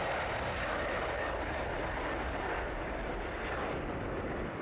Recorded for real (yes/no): yes